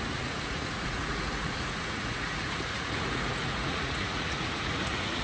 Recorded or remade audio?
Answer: remade